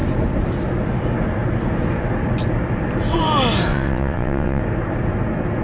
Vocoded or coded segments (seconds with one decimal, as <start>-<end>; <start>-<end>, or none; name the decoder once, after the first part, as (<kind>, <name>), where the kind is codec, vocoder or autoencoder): 3.7-4.6 (vocoder, WaveNeXt)